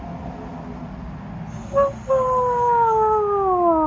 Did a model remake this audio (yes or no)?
no